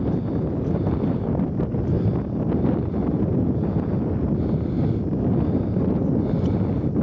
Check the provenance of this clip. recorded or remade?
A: recorded